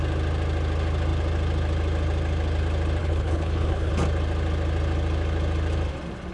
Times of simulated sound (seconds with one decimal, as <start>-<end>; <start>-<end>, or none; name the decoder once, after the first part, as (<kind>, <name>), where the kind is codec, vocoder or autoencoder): 3.0-3.9 (codec, HILCodec)